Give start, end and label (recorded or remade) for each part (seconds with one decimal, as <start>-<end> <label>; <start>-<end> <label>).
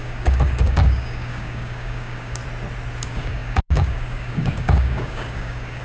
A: 0.0-2.4 remade; 2.4-3.0 recorded; 3.0-5.8 remade